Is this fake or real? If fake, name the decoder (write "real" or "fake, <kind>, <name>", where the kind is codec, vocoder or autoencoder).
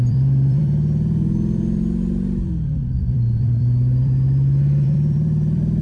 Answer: fake, vocoder, BigVGAN v2